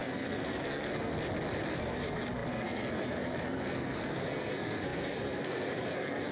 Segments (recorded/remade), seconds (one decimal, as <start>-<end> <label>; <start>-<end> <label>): 0.0-1.1 remade; 1.1-1.7 recorded; 1.7-6.3 remade